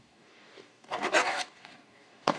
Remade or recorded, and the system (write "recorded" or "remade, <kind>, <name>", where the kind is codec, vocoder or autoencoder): remade, codec, DAC